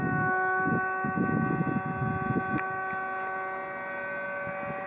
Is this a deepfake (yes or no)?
no